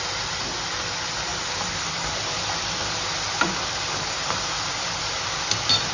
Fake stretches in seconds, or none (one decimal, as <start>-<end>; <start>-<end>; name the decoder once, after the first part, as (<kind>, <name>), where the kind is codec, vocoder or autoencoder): 1.3-4.8 (vocoder, BigVGAN v2)